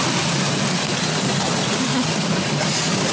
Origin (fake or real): real